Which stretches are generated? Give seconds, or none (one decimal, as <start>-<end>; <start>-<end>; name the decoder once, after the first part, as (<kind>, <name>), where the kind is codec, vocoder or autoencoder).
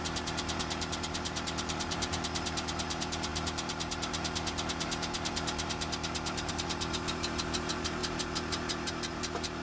0.0-9.6 (vocoder, BigVGAN v2)